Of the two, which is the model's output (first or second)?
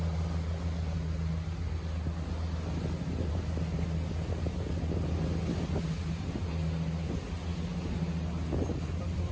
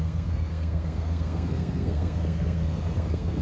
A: second